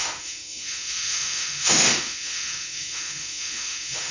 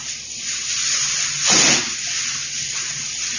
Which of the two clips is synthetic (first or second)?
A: first